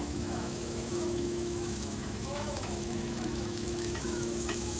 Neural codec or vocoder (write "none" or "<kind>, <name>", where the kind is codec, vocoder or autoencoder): autoencoder, DAC-VAE